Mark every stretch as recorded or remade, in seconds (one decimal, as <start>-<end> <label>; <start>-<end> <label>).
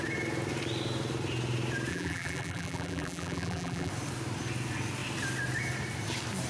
0.0-1.9 recorded; 1.9-3.9 remade; 3.9-6.5 recorded